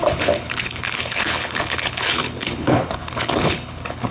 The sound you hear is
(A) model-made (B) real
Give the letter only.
A